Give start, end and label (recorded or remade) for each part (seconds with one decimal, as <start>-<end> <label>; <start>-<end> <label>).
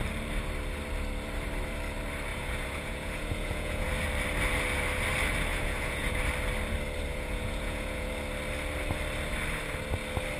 0.0-2.3 recorded; 2.3-3.9 remade; 3.9-5.5 recorded; 5.5-6.2 remade; 6.2-7.1 recorded; 7.1-8.1 remade; 8.1-10.4 recorded